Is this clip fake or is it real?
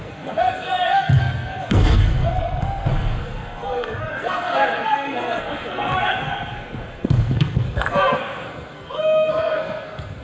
fake